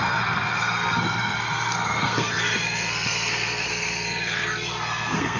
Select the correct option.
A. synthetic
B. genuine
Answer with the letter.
A